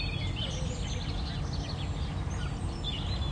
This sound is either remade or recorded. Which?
recorded